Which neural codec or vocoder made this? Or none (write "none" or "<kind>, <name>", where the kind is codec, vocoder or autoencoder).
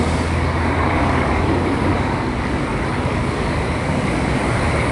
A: codec, DAC